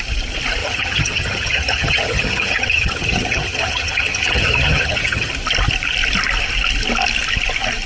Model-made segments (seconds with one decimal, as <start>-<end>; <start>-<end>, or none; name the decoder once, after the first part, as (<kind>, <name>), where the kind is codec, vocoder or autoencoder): 0.6-5.3 (vocoder, HiFi-GAN)